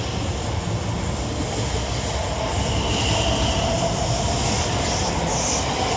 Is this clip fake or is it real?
real